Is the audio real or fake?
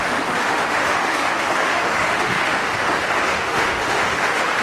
fake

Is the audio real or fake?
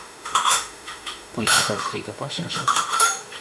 fake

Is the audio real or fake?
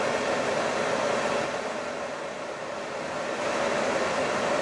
real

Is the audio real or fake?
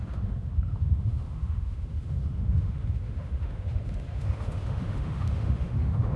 fake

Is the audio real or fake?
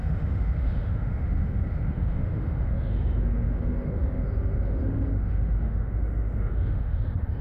fake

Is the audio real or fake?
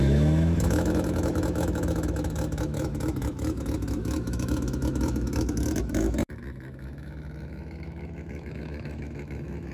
fake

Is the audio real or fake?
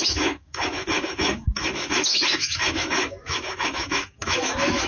fake